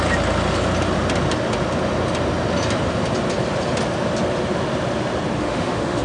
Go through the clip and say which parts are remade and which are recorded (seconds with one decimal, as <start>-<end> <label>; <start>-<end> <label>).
0.0-5.4 recorded; 5.4-6.0 remade